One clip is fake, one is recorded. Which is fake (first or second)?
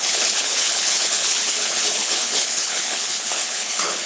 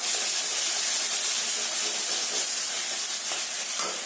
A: first